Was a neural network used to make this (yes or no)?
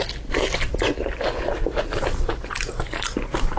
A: no